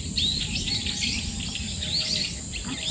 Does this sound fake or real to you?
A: real